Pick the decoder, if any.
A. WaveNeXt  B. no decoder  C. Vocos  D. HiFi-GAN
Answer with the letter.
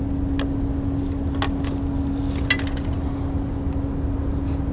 B